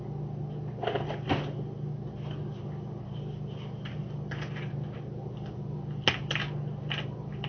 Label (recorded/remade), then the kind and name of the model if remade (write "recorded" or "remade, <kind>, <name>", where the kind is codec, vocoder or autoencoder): recorded